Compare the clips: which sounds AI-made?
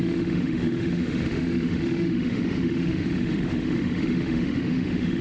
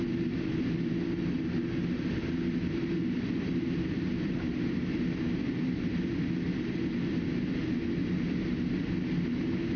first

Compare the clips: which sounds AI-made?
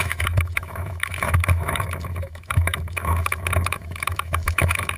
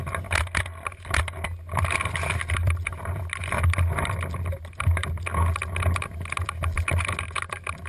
first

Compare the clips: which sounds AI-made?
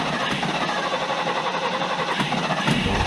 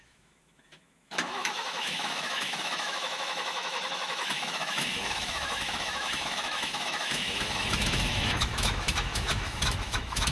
second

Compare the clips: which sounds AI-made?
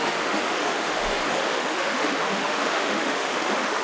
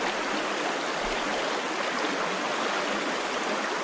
first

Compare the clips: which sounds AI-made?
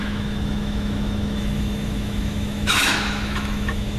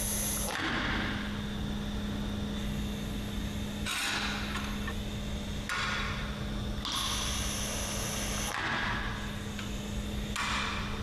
first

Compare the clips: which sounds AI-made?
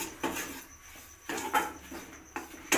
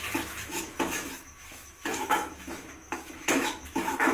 second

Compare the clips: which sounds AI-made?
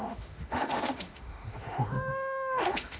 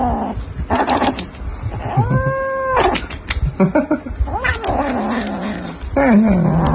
first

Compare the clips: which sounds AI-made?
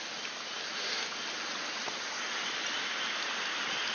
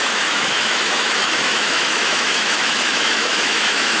second